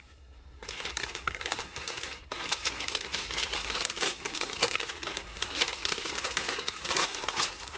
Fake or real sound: fake